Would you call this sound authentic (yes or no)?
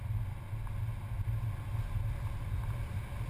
yes